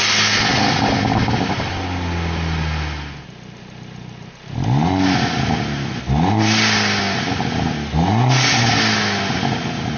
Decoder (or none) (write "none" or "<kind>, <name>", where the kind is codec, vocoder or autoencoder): none